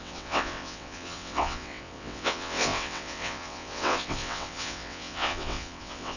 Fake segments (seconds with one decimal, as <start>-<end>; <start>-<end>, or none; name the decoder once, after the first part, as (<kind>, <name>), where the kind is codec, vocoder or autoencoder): 0.0-6.2 (vocoder, WaveNeXt)